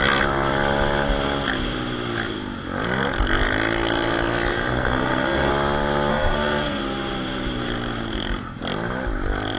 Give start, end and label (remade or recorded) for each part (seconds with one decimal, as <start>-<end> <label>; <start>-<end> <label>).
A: 0.0-4.5 recorded; 4.5-5.5 remade; 5.5-6.1 recorded; 6.1-6.8 remade; 6.8-9.6 recorded